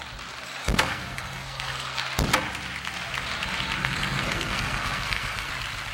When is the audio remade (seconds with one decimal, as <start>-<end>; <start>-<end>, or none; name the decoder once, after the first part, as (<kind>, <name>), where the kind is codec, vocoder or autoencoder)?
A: 0.6-2.0 (codec, SNAC); 3.8-5.5